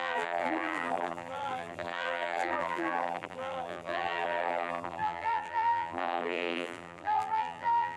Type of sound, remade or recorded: remade